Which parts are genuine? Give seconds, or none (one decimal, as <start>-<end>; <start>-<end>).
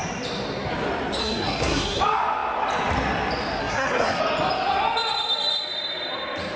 0.0-1.2; 2.0-3.6; 4.2-6.6